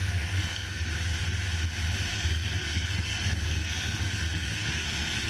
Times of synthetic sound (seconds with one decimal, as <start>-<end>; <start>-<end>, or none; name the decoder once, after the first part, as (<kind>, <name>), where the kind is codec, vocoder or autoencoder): 0.0-0.8 (codec, SNAC); 2.1-5.3